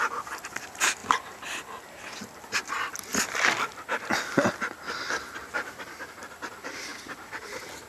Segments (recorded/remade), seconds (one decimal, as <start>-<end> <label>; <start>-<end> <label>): 0.0-1.0 recorded; 1.0-1.8 remade; 1.8-3.1 recorded; 3.1-3.7 remade; 3.7-6.2 recorded; 6.2-6.9 remade; 6.9-7.9 recorded